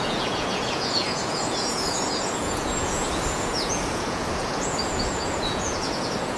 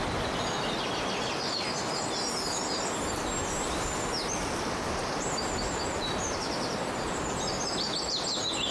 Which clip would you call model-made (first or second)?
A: first